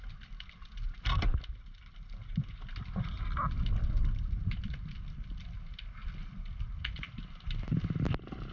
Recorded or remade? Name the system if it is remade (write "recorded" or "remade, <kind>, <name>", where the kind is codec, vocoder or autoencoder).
recorded